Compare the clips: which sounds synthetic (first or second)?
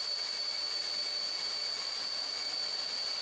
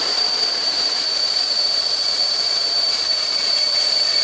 second